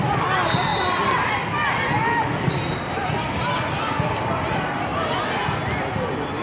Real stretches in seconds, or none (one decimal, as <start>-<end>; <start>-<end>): 0.0-6.4